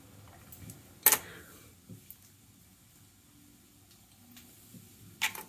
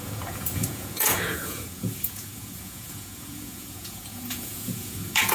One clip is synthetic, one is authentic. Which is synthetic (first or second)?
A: second